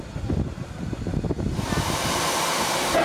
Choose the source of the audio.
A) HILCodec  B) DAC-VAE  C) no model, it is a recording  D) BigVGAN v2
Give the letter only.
C